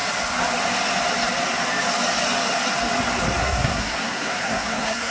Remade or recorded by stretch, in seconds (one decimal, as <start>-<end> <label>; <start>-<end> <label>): 0.0-3.4 recorded; 3.4-5.1 remade

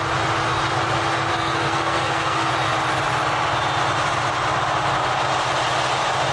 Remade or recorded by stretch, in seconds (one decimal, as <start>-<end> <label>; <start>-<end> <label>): 0.0-1.3 recorded; 1.3-2.5 remade; 2.5-6.3 recorded

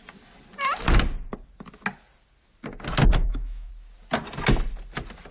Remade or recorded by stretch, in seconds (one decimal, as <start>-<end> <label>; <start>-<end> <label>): 0.0-3.2 recorded; 3.2-3.7 remade; 3.7-5.3 recorded

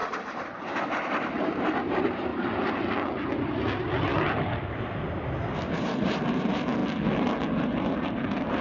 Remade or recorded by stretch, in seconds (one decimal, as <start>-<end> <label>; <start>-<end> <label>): 0.0-2.3 remade; 2.3-5.7 recorded; 5.7-6.8 remade; 6.8-7.6 recorded; 7.6-8.6 remade

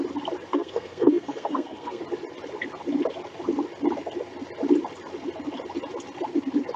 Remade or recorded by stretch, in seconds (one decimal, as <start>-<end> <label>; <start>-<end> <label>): 0.0-0.5 recorded; 0.5-2.0 remade; 2.0-6.8 recorded

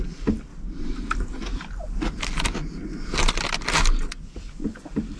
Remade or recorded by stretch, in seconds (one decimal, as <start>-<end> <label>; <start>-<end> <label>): 0.0-5.2 recorded

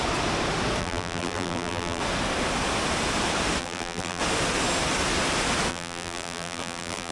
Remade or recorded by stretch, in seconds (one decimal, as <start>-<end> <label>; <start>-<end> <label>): 0.0-0.8 recorded; 0.8-2.0 remade; 2.0-3.6 recorded; 3.6-4.2 remade; 4.2-5.7 recorded; 5.7-7.1 remade

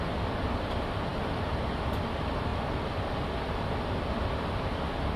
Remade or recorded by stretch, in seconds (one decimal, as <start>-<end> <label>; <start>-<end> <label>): 0.0-5.2 recorded